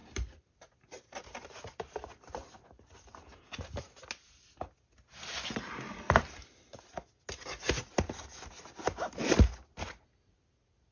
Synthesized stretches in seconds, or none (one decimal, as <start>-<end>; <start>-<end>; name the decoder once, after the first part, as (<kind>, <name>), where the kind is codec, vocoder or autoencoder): 0.0-3.2 (vocoder, BigVGAN v2)